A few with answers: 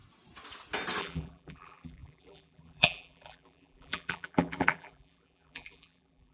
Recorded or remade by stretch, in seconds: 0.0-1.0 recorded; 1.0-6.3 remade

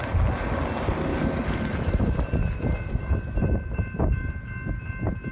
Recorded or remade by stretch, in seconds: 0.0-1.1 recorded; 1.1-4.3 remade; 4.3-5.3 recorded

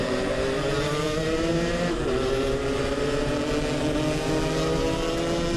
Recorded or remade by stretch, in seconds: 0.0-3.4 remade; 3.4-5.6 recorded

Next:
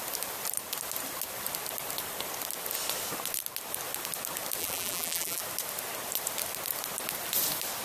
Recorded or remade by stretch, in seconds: 0.0-4.6 recorded; 4.6-5.4 remade; 5.4-7.8 recorded

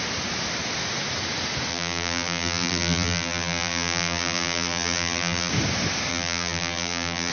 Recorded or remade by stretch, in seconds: 0.0-1.7 recorded; 1.7-5.5 remade; 5.5-6.1 recorded; 6.1-7.3 remade

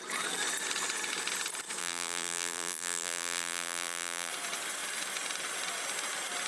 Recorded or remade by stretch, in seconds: 0.0-1.8 recorded; 1.8-4.3 remade; 4.3-6.5 recorded

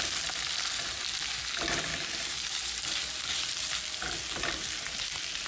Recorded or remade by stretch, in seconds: 0.0-5.5 recorded

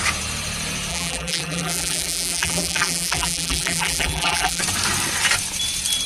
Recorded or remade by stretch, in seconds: 0.0-0.9 recorded; 0.9-4.6 remade; 4.6-6.1 recorded